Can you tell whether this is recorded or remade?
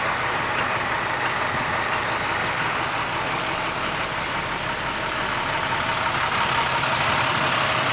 recorded